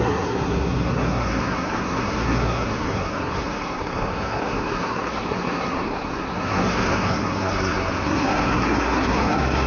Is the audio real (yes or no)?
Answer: no